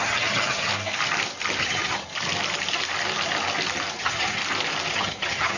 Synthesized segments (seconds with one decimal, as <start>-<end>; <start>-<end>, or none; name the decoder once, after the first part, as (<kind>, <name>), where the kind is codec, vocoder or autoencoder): 0.0-0.7 (vocoder, HiFi-GAN); 1.6-2.1; 4.0-4.4; 4.9-5.6